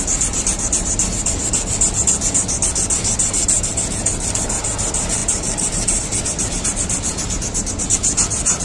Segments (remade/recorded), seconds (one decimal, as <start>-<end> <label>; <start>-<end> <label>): 0.0-8.6 recorded